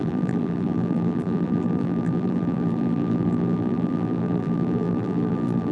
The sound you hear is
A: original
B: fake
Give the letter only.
B